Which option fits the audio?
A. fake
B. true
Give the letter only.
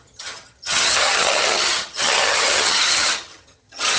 A